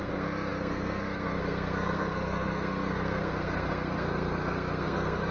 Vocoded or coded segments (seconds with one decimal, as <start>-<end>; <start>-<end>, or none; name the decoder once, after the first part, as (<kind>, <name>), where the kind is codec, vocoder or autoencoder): 0.0-5.3 (codec, SNAC)